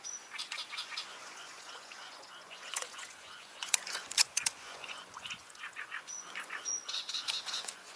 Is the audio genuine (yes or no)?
no